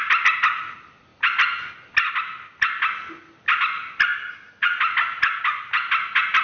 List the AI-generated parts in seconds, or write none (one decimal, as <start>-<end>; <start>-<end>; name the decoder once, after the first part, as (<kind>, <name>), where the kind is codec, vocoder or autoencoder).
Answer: none